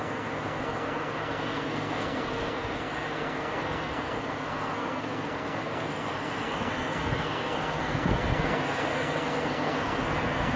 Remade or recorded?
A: remade